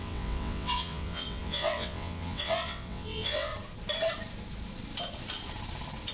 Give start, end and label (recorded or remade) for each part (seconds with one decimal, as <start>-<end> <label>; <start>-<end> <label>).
0.0-3.5 remade; 3.5-6.1 recorded